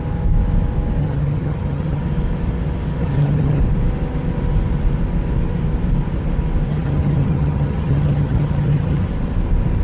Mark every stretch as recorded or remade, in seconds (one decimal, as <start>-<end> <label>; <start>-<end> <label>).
0.0-1.0 recorded; 1.0-2.0 remade; 2.0-3.0 recorded; 3.0-3.6 remade; 3.6-6.7 recorded; 6.7-9.1 remade; 9.1-9.8 recorded